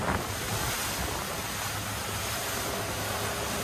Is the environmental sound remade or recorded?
recorded